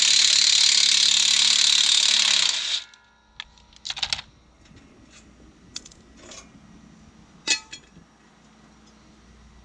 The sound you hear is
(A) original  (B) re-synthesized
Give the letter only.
A